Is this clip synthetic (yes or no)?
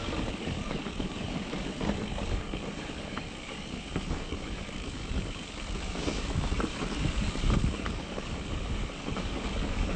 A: yes